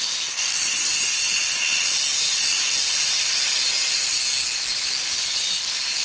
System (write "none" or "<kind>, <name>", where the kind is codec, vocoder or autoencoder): none